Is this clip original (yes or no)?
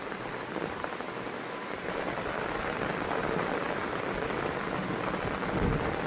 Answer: yes